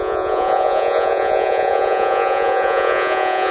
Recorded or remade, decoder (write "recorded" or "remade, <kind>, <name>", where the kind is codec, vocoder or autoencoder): remade, vocoder, Vocos